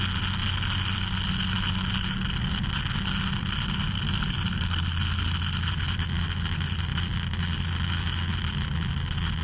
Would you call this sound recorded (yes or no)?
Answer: yes